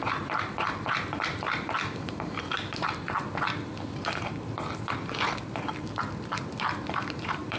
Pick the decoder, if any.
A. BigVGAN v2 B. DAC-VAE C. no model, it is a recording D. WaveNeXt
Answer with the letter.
A